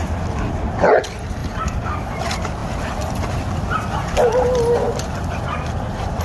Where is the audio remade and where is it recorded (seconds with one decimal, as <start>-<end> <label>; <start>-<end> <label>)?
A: 0.0-1.4 recorded; 1.4-2.2 remade; 2.2-6.2 recorded